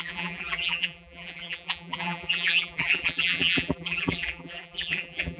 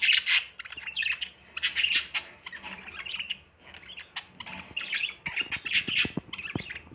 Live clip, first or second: second